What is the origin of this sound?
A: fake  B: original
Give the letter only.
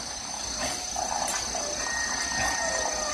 B